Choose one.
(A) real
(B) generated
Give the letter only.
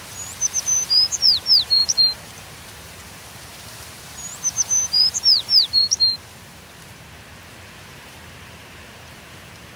B